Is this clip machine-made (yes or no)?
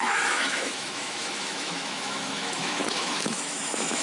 yes